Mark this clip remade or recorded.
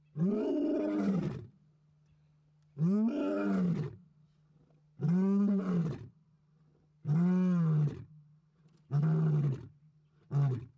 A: recorded